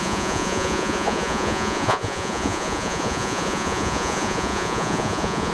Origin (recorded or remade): remade